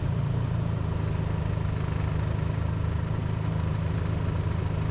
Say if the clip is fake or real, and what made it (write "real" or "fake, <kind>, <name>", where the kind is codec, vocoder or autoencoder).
real